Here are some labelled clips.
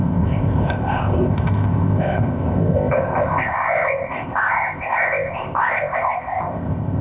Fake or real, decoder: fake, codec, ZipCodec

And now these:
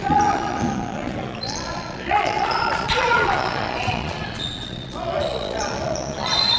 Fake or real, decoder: fake, vocoder, Vocos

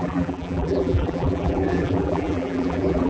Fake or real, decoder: fake, vocoder, BigVGAN v2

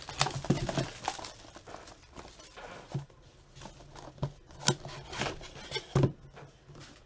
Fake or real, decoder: real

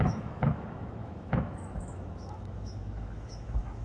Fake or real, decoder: fake, autoencoder, DAC-VAE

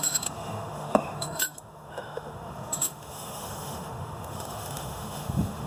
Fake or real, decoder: fake, autoencoder, DAC-VAE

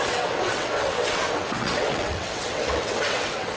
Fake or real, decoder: fake, vocoder, WaveNeXt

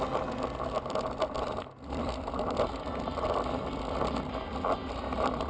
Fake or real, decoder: real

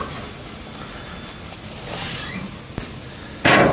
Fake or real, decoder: real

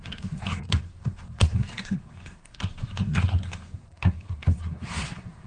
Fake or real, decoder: fake, codec, SNAC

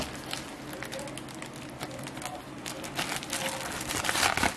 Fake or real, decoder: real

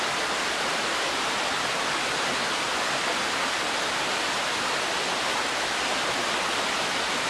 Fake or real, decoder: real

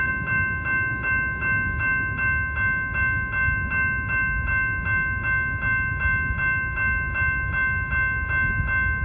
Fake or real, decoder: real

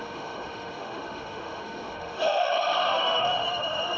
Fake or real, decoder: fake, autoencoder, DAC-VAE